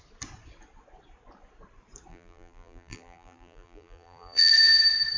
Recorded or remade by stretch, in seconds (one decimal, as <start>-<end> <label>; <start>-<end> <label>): 0.0-2.1 recorded; 2.1-4.5 remade; 4.5-5.2 recorded